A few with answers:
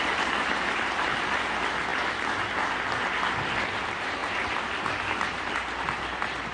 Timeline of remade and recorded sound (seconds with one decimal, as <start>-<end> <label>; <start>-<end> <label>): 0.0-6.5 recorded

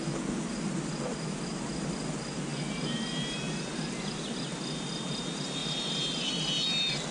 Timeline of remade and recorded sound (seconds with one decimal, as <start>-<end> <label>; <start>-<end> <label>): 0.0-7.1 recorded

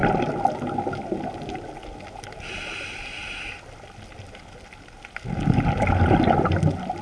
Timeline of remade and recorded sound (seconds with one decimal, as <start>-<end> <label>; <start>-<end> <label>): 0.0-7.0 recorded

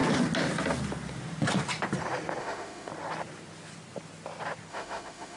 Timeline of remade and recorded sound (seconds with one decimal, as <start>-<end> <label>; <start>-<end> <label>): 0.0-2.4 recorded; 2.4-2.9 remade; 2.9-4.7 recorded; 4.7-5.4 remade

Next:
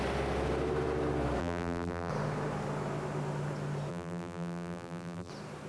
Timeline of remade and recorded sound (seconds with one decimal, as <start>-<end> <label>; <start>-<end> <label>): 0.0-1.4 recorded; 1.4-2.1 remade; 2.1-3.9 recorded; 3.9-5.3 remade; 5.3-5.7 recorded